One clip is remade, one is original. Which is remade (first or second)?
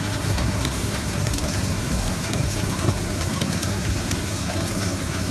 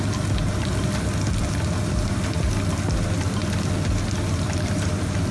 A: first